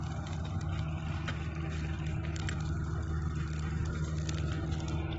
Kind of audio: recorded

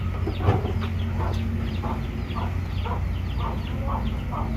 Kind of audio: recorded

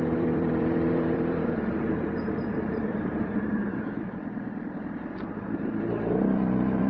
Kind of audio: remade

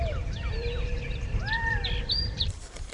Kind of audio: remade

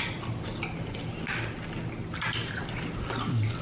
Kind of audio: recorded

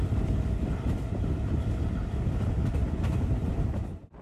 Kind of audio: recorded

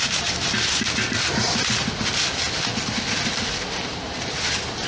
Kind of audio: recorded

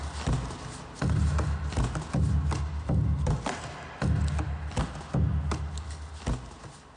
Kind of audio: recorded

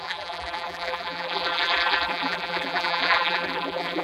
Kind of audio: remade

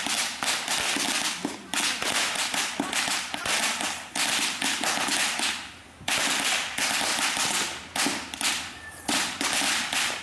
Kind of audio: remade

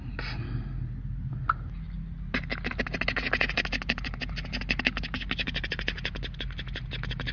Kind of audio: recorded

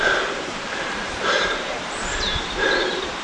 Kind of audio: remade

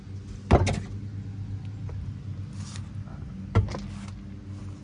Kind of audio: recorded